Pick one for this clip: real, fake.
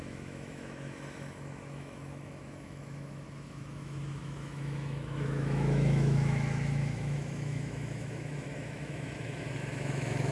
fake